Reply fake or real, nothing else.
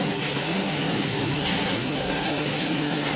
fake